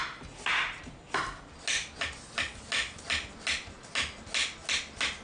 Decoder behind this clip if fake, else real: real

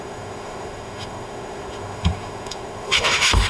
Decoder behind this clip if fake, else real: fake, autoencoder, DAC-VAE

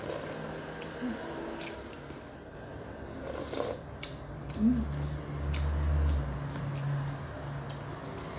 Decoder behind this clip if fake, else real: real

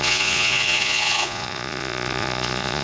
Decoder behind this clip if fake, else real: fake, vocoder, Vocos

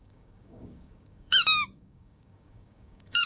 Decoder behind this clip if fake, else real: fake, codec, DAC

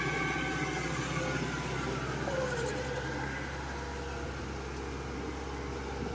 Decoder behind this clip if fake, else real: real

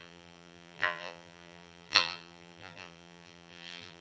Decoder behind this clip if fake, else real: fake, vocoder, BigVGAN v2